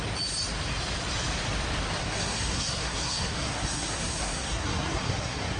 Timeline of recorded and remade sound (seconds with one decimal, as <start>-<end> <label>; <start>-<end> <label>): 0.0-2.0 recorded; 2.0-5.6 remade